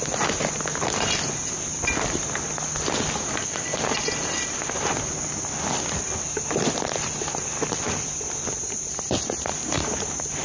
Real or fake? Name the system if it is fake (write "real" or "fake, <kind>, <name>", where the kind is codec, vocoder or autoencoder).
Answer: real